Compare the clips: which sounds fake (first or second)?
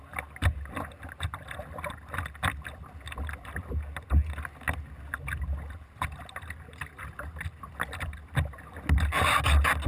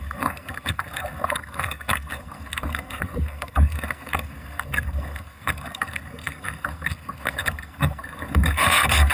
second